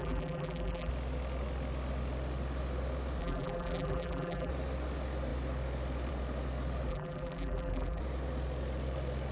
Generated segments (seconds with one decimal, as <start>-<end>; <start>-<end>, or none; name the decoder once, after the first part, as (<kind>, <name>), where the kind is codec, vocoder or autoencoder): 0.0-0.9 (vocoder, BigVGAN v2); 3.2-4.5; 6.9-8.0